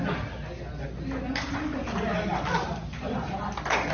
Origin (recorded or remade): recorded